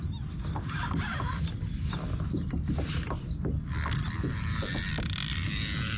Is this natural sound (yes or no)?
yes